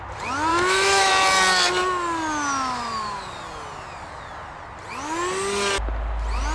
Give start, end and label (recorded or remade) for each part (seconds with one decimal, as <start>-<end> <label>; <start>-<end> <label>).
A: 0.0-0.5 recorded; 0.5-1.1 remade; 1.1-6.5 recorded